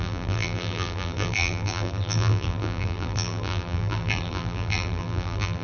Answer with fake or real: fake